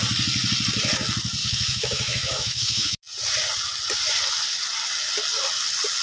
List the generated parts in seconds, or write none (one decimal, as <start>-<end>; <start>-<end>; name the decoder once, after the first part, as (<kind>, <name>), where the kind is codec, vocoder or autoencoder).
1.4-3.0 (autoencoder, DAC-VAE)